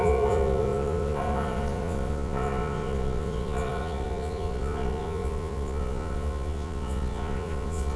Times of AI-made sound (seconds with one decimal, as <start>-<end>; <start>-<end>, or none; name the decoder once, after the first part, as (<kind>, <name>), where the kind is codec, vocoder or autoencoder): 0.0-8.0 (vocoder, Vocos)